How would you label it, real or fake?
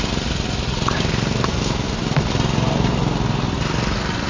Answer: real